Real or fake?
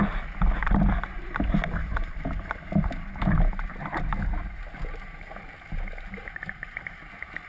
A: real